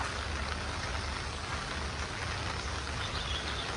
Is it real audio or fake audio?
real